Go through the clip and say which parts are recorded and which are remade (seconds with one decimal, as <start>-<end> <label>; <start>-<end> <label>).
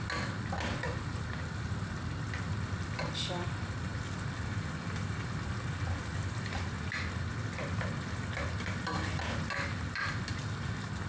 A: 0.0-11.1 recorded